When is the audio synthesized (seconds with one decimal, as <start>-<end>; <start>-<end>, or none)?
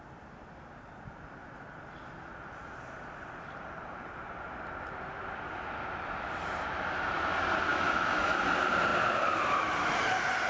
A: 7.7-8.4